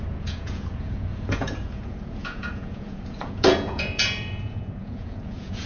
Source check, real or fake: fake